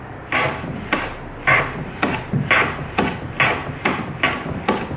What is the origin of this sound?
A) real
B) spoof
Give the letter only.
A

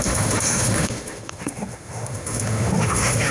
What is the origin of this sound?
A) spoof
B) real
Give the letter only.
A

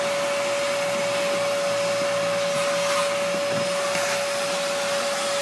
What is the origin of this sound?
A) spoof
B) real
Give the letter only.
B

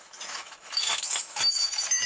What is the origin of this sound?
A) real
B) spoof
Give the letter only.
B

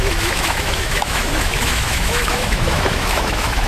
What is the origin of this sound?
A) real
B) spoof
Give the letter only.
B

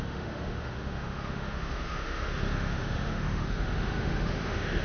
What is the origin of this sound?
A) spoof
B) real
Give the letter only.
A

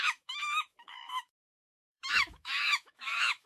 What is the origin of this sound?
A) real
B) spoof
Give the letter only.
B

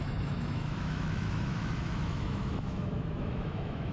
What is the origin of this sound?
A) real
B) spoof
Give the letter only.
B